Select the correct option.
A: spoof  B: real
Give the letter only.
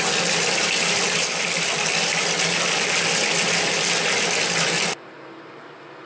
B